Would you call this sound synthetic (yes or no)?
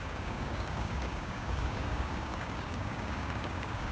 yes